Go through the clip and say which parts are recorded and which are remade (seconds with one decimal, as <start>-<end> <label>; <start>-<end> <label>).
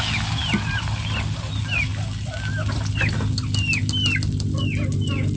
0.0-5.4 recorded